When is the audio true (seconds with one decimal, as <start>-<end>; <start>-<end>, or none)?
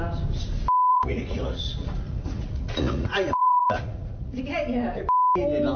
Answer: 0.0-0.9; 4.4-5.8